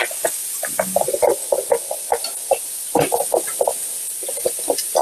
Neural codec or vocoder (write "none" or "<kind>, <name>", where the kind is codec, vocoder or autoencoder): none